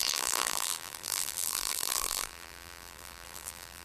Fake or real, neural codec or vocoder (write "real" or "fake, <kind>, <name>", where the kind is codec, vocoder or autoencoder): fake, vocoder, BigVGAN v2